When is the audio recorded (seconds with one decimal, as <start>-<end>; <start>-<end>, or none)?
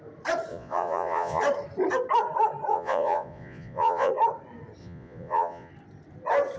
0.0-0.5; 1.4-2.7; 4.1-4.8; 5.7-6.6